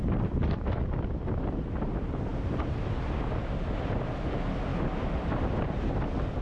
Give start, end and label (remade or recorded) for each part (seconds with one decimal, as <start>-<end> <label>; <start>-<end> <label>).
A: 0.0-6.4 recorded